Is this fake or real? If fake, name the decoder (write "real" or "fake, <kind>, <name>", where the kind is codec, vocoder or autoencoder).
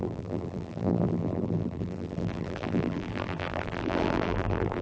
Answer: fake, vocoder, BigVGAN v2